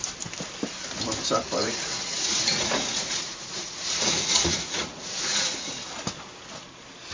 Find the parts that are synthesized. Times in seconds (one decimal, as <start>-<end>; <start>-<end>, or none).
1.6-5.9